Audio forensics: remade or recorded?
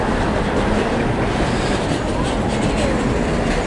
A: recorded